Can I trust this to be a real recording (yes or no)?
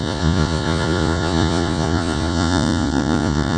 no